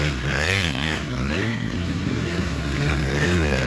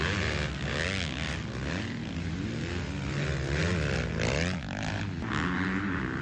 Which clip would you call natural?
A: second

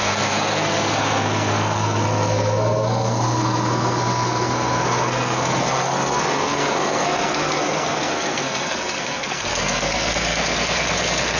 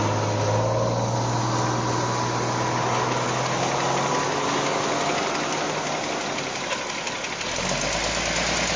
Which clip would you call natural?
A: second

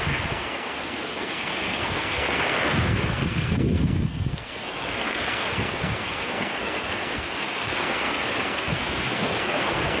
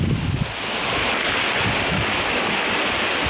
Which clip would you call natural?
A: second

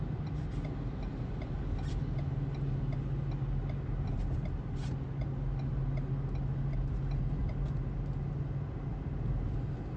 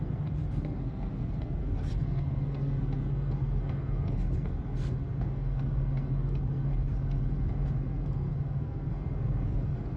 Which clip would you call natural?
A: first